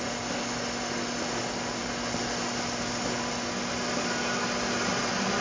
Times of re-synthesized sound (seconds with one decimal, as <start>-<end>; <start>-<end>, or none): 1.8-5.0